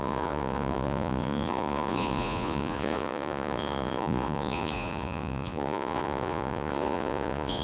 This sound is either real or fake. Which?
fake